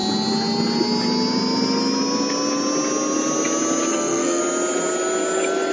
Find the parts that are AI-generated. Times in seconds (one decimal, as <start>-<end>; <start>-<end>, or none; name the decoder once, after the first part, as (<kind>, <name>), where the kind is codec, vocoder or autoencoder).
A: 3.9-4.4 (codec, SNAC)